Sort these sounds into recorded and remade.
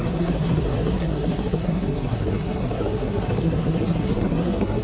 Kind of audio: remade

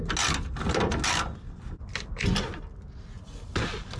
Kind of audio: recorded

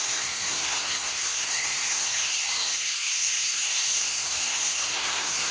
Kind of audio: remade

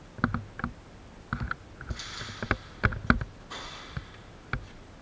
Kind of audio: recorded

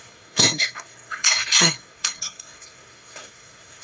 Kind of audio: remade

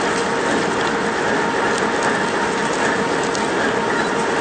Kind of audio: recorded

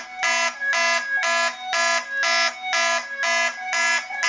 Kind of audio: recorded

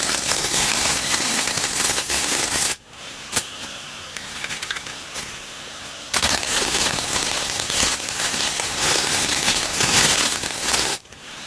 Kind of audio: remade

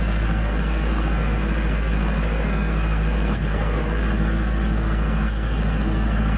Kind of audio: remade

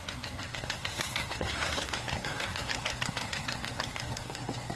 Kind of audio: remade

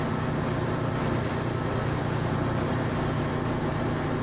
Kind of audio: recorded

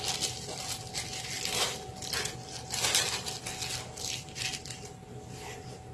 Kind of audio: recorded